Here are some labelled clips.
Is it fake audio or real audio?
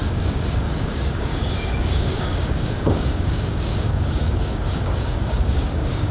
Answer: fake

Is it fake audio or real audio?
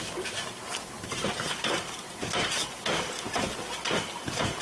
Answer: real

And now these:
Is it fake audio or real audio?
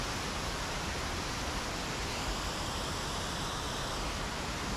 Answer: real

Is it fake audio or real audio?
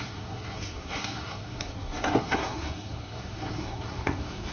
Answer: fake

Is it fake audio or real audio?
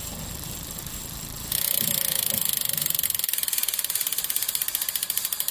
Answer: real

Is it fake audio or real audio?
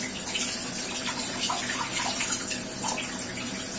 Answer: real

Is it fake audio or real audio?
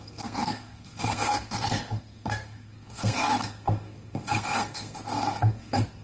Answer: fake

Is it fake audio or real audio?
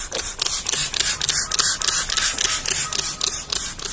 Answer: real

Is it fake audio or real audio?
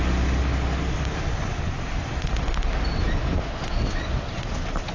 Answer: real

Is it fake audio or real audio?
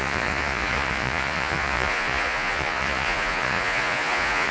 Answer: fake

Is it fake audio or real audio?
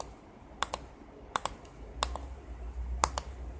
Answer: real